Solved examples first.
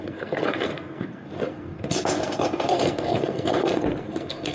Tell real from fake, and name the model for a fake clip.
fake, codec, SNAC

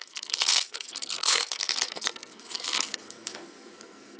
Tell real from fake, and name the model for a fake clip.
fake, codec, SNAC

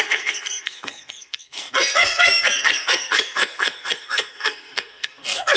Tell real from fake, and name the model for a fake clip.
fake, codec, SNAC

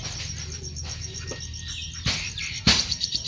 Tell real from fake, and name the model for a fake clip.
real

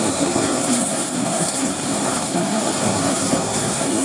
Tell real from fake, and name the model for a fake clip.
fake, codec, SNAC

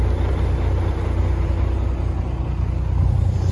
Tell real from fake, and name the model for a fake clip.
real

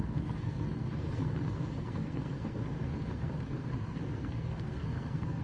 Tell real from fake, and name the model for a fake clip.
fake, codec, SNAC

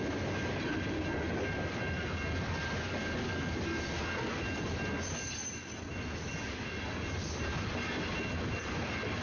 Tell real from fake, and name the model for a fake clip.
real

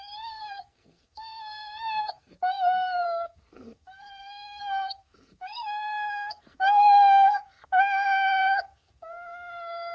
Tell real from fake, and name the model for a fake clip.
fake, codec, SNAC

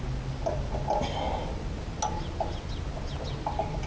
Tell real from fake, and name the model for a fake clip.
real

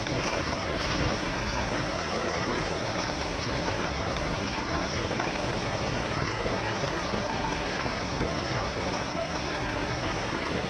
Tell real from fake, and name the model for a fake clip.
fake, codec, SNAC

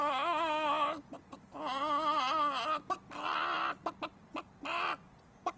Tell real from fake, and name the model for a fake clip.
real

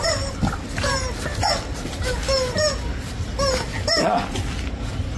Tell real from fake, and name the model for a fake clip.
real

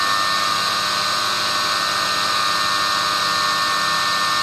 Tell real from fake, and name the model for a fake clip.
real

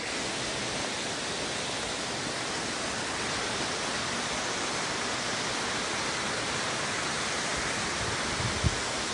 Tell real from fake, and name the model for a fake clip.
real